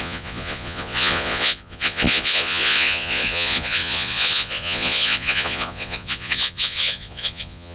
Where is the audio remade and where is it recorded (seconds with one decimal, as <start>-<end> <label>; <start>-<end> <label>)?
0.0-7.7 remade